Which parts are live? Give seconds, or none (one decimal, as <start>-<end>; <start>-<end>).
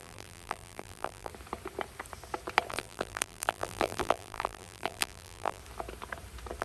1.3-2.7; 5.6-6.6